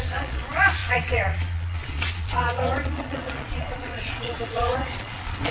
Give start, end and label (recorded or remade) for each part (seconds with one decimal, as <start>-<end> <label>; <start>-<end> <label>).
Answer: 0.0-5.5 remade

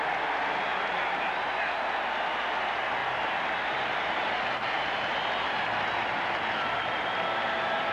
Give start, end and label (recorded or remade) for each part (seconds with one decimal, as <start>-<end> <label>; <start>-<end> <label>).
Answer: 0.0-7.9 recorded

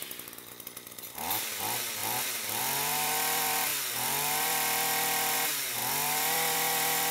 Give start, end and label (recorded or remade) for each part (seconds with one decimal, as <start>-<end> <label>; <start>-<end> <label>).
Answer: 0.0-7.1 remade

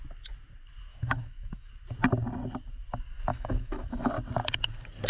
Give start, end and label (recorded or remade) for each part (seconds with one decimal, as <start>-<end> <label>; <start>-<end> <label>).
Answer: 0.0-0.9 recorded; 0.9-1.7 remade; 1.7-3.3 recorded; 3.3-4.1 remade; 4.1-5.1 recorded